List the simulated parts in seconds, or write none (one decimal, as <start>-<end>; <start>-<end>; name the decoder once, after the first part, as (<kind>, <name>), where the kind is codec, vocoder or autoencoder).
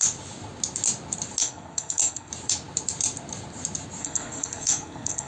1.4-2.3 (codec, SNAC); 4.0-5.3